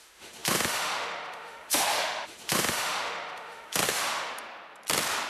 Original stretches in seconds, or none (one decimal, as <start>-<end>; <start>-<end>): 4.3-5.3